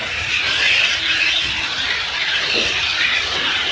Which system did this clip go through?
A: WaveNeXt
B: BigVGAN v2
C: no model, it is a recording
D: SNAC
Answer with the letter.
C